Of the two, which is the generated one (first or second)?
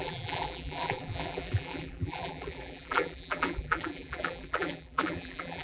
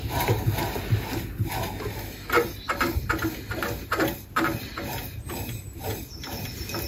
first